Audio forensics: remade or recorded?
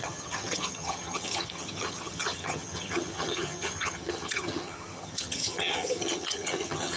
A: remade